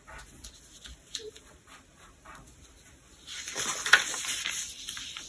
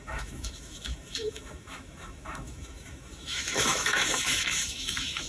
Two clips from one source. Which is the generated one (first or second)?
second